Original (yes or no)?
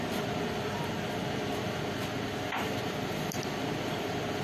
yes